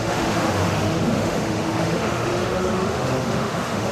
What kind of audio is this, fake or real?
fake